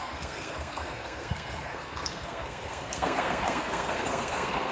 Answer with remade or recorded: remade